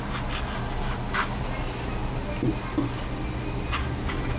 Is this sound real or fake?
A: real